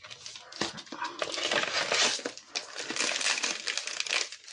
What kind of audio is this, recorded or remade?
recorded